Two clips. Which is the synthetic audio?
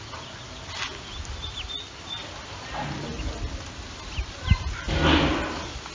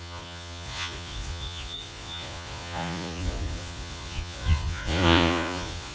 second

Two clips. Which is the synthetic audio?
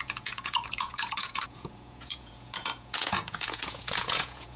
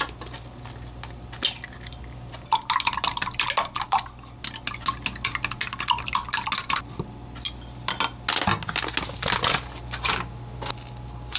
first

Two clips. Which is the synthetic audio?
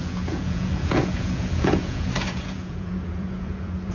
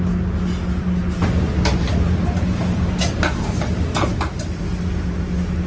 first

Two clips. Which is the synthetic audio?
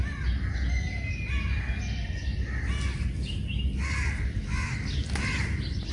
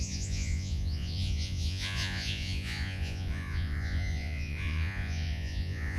second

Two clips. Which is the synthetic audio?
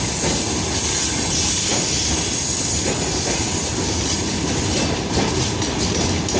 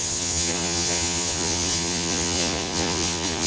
second